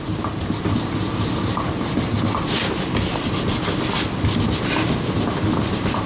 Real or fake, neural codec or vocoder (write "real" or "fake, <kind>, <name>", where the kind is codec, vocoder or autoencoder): real